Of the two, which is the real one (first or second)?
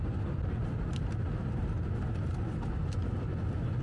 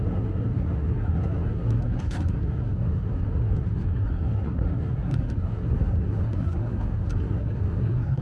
first